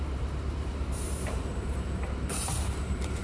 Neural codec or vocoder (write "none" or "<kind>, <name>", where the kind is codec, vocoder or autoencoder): vocoder, BigVGAN v2